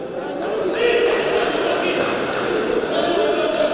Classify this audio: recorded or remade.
recorded